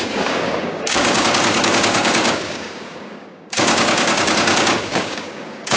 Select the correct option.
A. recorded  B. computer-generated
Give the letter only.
B